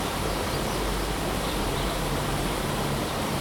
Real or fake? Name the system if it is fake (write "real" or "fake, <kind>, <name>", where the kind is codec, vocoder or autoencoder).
fake, vocoder, BigVGAN v2